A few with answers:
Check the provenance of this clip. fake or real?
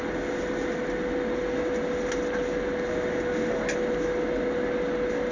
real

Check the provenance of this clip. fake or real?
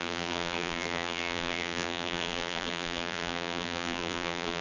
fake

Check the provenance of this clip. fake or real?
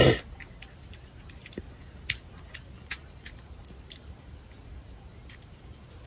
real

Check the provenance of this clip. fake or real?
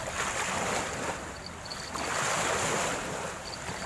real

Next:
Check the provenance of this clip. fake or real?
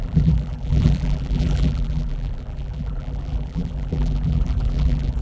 fake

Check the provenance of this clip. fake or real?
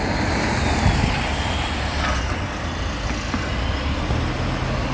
real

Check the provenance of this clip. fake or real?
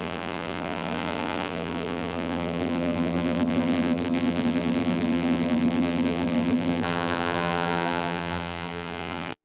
fake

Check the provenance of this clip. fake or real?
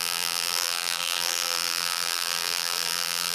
fake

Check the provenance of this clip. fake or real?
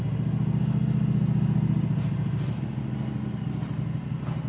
real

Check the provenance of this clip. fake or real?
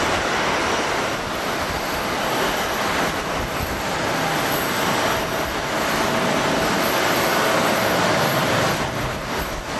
real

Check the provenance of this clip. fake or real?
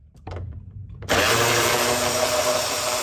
fake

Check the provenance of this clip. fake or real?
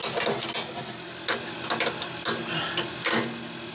real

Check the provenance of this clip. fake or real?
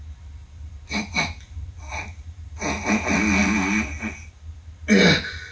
real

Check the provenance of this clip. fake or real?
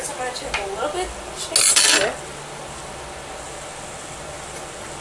real